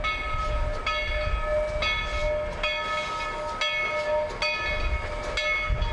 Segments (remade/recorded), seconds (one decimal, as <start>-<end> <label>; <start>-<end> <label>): 0.0-5.9 recorded